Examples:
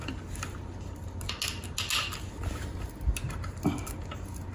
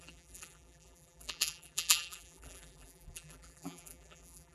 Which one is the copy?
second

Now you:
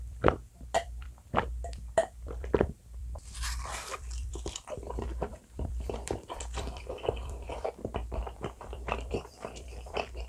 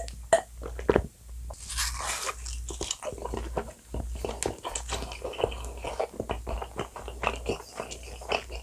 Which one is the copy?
first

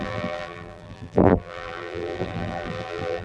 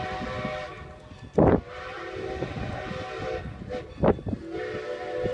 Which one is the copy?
first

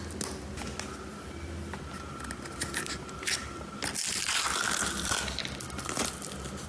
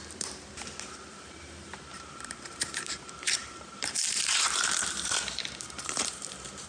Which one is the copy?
second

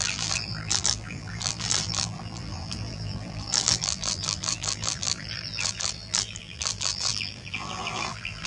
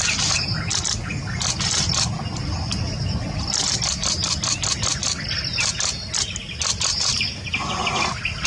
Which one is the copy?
first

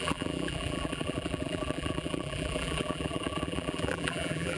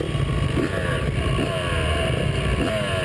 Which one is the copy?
first